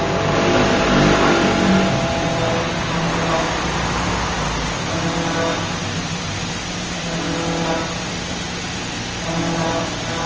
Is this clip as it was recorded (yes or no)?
yes